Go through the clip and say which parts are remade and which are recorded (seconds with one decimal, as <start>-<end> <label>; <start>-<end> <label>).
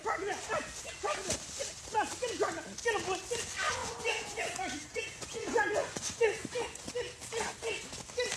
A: 0.0-3.8 recorded; 3.8-6.9 remade; 6.9-8.4 recorded